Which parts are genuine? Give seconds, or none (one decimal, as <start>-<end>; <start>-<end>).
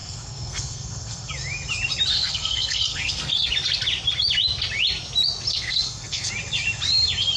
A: 1.3-2.1; 3.5-5.5; 6.3-7.4